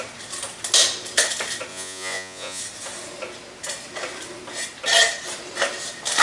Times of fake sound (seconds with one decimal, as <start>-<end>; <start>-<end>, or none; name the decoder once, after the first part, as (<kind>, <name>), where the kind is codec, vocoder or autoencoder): 1.7-2.6 (vocoder, Vocos)